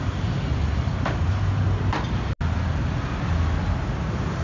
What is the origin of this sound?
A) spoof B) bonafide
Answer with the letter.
B